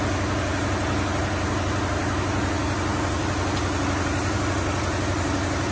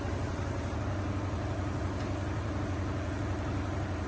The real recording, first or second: first